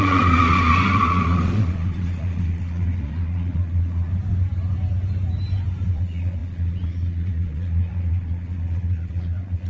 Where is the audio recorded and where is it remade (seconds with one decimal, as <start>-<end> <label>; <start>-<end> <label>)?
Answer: 0.0-4.1 remade; 4.1-5.9 recorded; 5.9-9.7 remade